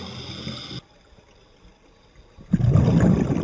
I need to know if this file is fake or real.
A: real